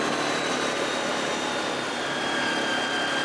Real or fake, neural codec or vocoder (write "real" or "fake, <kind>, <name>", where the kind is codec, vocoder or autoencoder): real